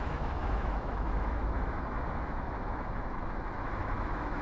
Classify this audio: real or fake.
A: fake